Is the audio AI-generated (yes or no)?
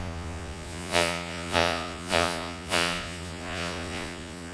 yes